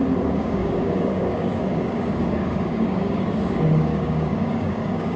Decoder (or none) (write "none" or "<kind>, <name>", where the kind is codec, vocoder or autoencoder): codec, DAC